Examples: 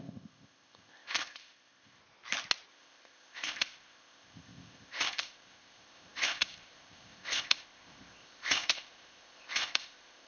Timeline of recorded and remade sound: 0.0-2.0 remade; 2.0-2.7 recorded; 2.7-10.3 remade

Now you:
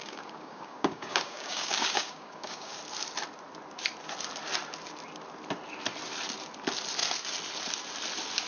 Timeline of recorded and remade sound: 0.0-2.8 remade; 2.8-8.5 recorded